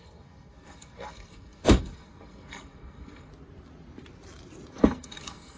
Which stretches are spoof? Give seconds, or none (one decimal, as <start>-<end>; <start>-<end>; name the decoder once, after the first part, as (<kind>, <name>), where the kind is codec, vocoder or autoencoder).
0.0-3.3 (codec, SNAC); 4.7-5.6